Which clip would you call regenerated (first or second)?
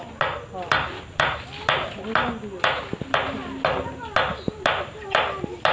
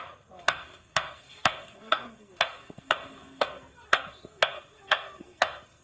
second